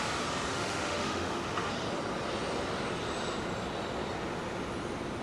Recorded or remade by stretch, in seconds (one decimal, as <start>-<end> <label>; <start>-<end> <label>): 0.0-0.5 recorded; 0.5-1.7 remade; 1.7-5.2 recorded